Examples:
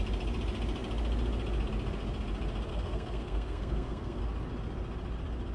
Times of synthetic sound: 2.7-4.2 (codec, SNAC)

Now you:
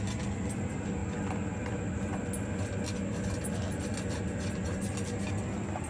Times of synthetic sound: none

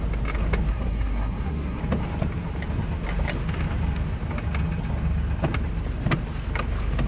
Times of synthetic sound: 0.7-1.8 (codec, SNAC)

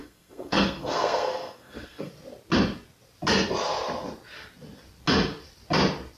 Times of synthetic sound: 0.0-2.1 (codec, SNAC)

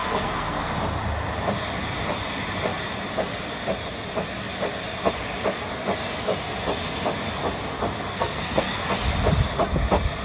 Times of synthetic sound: 0.0-0.7 (codec, SNAC); 8.1-8.8

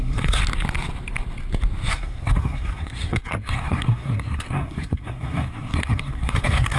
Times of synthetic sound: 0.0-0.4 (codec, SNAC); 1.9-6.8

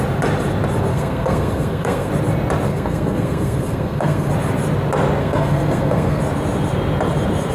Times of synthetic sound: 0.9-2.1 (codec, SNAC); 2.7-4.3; 5.2-6.2